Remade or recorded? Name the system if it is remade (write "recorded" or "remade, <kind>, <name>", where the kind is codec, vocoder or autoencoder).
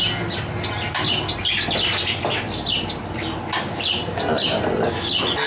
recorded